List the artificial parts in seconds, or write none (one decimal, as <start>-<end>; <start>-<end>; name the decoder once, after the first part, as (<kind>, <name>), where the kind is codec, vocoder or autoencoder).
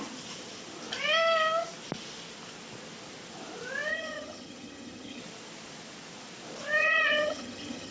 3.9-5.2 (vocoder, HiFi-GAN); 6.8-7.9